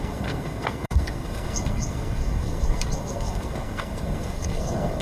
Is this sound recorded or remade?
remade